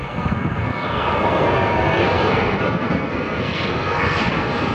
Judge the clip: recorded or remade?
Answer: remade